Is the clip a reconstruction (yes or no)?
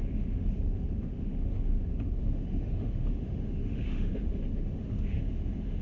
yes